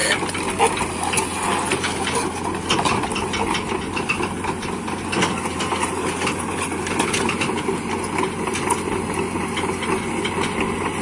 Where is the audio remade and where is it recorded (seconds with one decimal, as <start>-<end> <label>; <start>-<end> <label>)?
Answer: 0.0-11.0 recorded